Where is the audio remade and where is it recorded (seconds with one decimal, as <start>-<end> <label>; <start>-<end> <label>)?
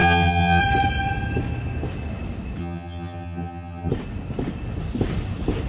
0.0-0.6 remade; 0.6-2.6 recorded; 2.6-3.9 remade; 3.9-5.7 recorded